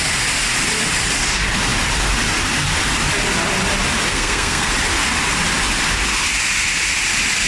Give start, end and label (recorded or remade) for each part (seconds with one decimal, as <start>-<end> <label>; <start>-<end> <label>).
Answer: 0.0-4.1 recorded; 4.1-4.7 remade; 4.7-7.5 recorded